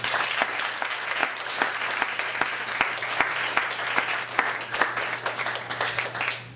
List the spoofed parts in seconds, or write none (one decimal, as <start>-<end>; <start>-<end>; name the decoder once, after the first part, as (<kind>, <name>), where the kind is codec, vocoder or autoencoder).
none